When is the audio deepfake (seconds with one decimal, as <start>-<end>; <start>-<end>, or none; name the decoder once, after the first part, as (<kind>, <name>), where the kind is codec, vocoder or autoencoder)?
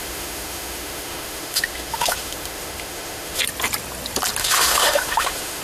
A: 0.0-3.4 (autoencoder, DAC-VAE); 4.4-5.6